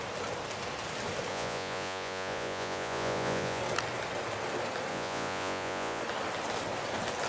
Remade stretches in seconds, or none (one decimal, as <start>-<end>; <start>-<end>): 1.3-3.6; 4.9-6.0